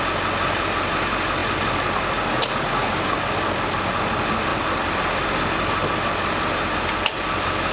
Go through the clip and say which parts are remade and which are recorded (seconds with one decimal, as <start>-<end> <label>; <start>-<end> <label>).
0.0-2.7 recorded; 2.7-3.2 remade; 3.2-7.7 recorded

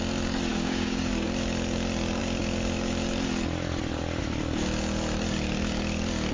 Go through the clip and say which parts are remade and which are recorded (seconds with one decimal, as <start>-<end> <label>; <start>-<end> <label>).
0.0-0.5 recorded; 0.5-1.1 remade; 1.1-6.3 recorded

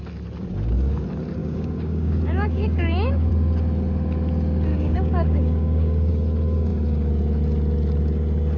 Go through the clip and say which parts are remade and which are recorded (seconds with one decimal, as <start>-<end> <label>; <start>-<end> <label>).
0.0-1.4 recorded; 1.4-3.3 remade; 3.3-4.7 recorded; 4.7-6.1 remade; 6.1-8.6 recorded

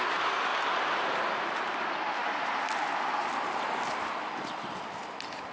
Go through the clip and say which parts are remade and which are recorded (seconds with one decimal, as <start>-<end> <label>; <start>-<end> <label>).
0.0-5.5 recorded

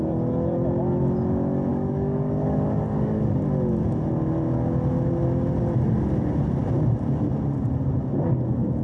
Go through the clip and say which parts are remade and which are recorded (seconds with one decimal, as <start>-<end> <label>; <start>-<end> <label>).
0.0-1.7 recorded; 1.7-3.4 remade; 3.4-8.8 recorded

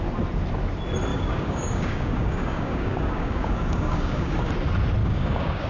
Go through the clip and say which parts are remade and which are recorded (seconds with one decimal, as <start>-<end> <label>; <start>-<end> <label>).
0.0-1.1 recorded; 1.1-4.5 remade; 4.5-5.0 recorded; 5.0-5.7 remade